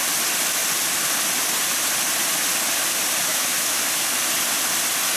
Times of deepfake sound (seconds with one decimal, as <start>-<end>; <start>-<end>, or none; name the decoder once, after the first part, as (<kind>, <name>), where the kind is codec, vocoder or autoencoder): 3.3-3.8 (autoencoder, DAC-VAE)